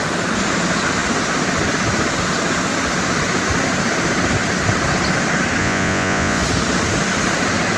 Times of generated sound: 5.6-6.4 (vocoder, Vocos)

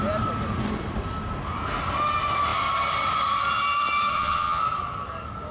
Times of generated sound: 4.1-4.6 (vocoder, HiFi-GAN)

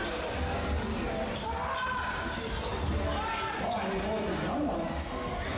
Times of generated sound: none

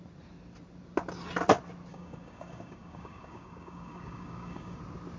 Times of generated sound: 1.9-4.8 (codec, DAC)

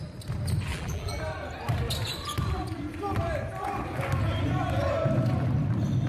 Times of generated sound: 0.7-1.2 (vocoder, BigVGAN v2)

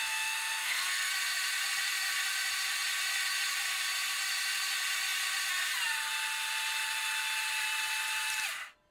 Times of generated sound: 0.0-1.1 (codec, SNAC)

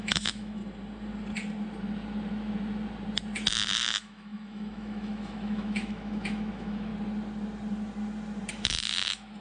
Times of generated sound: 0.0-0.6 (autoencoder, DAC-VAE); 3.5-6.9; 8.5-9.4

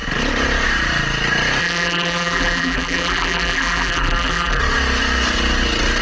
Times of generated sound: 1.6-4.6 (vocoder, BigVGAN v2)